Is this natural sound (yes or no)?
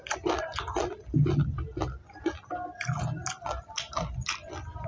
yes